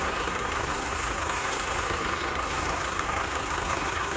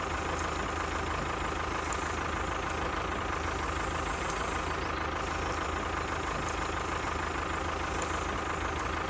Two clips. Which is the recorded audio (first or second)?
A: second